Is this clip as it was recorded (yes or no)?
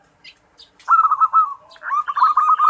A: yes